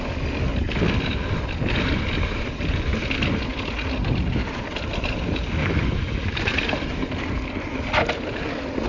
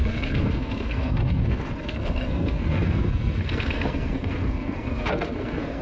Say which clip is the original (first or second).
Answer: first